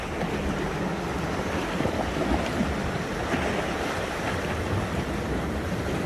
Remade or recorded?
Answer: recorded